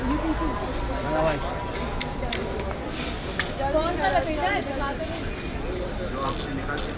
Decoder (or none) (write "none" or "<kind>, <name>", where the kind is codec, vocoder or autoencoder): none